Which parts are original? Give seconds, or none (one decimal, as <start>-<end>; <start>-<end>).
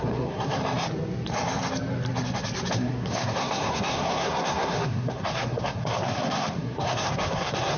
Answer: 0.6-2.7